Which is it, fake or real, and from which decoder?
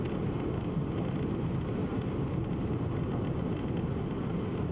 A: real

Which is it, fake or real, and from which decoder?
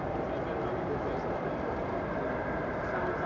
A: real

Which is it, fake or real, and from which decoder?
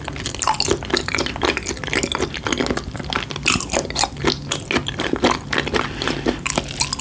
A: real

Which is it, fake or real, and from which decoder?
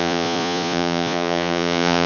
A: fake, vocoder, Vocos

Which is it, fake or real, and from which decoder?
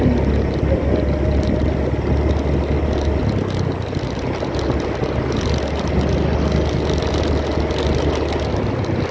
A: real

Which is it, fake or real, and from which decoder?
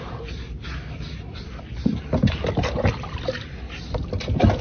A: real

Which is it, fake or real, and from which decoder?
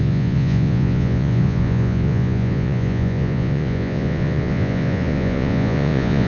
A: fake, vocoder, Vocos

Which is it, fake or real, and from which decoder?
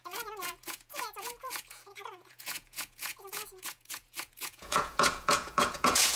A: fake, vocoder, Vocos